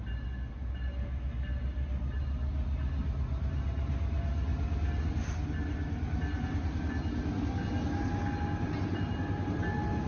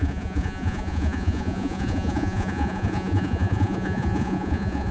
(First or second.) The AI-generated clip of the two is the second